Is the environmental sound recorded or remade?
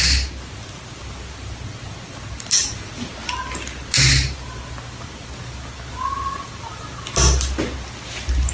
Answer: recorded